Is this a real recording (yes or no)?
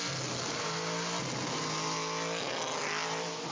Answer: yes